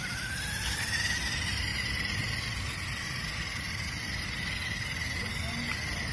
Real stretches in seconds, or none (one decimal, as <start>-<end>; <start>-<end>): 0.0-6.1